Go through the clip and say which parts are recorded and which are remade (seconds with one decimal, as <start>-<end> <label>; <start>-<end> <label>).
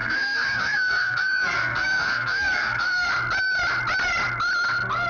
0.0-3.1 remade; 3.1-5.1 recorded